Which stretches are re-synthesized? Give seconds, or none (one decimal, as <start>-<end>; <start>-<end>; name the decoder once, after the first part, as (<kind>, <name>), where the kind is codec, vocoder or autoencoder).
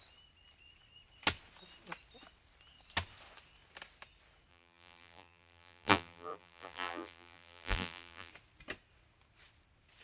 4.5-8.3 (vocoder, BigVGAN v2)